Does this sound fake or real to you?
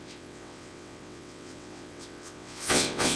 fake